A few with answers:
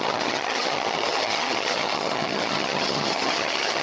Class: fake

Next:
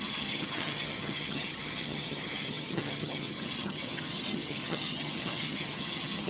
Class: fake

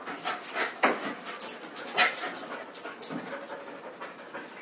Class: real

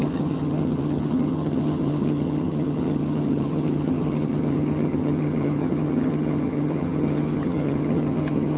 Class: fake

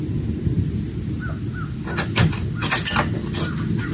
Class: real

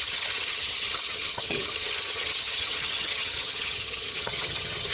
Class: fake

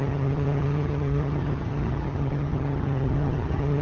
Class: fake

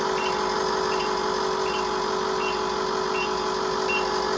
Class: real